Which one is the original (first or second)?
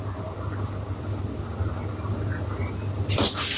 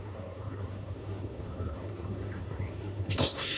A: first